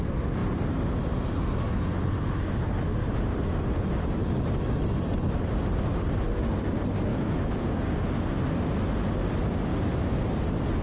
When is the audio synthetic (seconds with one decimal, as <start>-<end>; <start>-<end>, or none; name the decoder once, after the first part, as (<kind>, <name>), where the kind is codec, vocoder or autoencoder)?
0.4-1.8 (vocoder, BigVGAN v2); 7.1-7.7; 9.7-10.3